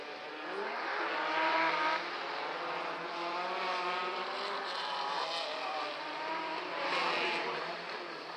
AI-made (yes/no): yes